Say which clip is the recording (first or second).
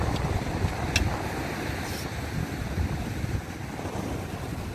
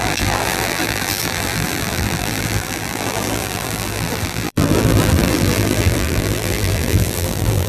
first